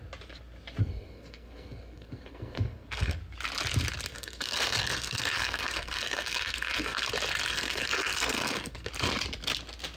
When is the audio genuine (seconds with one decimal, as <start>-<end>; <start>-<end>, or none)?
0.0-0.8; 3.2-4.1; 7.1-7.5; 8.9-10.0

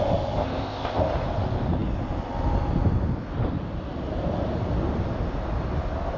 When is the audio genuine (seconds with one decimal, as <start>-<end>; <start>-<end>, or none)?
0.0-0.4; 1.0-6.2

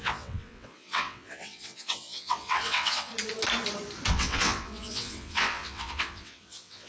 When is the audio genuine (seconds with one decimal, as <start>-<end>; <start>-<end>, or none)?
3.1-4.1

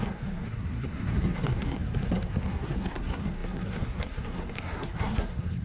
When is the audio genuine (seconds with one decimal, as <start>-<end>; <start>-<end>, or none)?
none

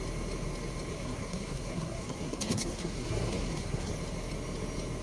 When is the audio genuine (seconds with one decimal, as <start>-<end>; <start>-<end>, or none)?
0.0-0.9; 3.9-5.0

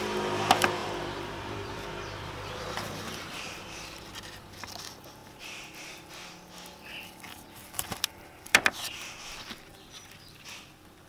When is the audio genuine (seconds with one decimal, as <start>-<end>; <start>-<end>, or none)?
0.0-0.8; 4.6-5.2; 6.1-7.6; 10.3-11.1